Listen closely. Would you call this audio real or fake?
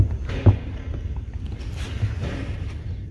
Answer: real